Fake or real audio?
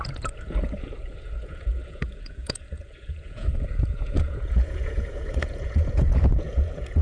fake